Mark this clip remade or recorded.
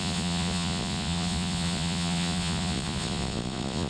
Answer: remade